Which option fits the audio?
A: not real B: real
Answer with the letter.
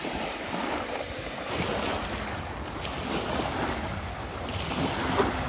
B